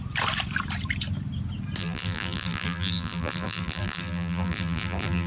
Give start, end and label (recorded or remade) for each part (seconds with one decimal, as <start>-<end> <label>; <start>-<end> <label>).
0.0-1.8 recorded; 1.8-5.3 remade